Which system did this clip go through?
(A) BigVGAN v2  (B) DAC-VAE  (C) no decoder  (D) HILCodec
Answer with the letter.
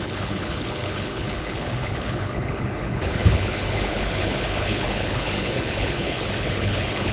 D